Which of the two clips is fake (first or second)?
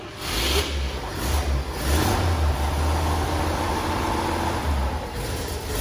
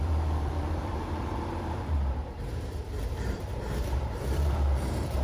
second